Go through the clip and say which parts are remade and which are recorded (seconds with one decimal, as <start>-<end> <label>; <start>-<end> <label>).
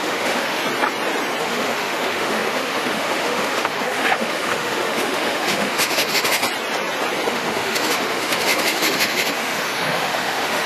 0.0-0.6 remade; 0.6-1.4 recorded; 1.4-6.4 remade; 6.4-7.3 recorded; 7.3-10.7 remade